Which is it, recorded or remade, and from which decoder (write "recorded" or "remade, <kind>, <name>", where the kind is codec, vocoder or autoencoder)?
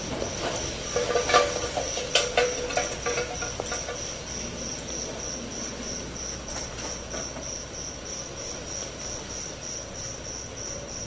recorded